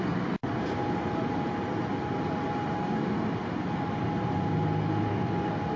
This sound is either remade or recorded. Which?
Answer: recorded